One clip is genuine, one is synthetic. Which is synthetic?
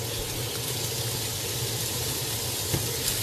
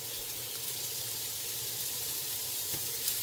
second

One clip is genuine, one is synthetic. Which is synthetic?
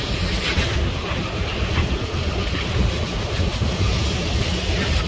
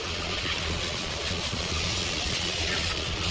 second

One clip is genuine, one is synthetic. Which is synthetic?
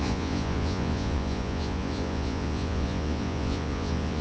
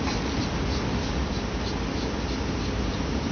first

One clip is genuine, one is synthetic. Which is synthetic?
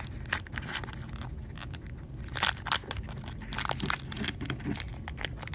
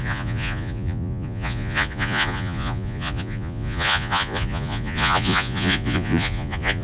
second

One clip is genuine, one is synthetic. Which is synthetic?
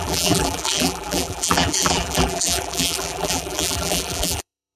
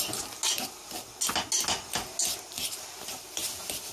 first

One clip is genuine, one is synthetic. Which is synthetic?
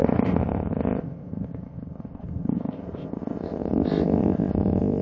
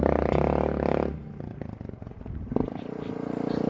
first